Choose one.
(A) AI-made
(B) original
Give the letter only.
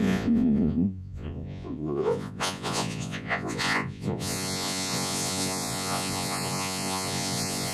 A